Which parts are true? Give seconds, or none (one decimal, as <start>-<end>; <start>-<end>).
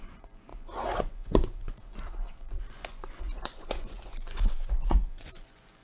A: none